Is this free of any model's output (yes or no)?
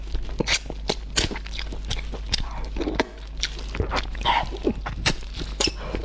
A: yes